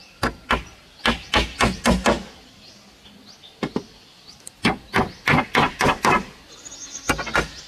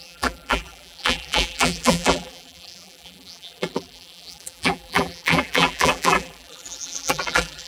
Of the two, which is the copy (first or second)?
second